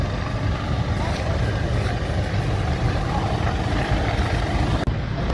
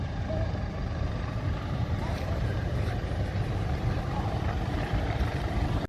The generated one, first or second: second